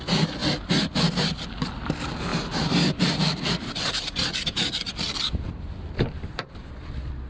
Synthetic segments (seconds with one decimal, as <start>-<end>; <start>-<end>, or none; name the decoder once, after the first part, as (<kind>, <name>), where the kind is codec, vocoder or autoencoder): 2.3-6.7 (vocoder, BigVGAN v2)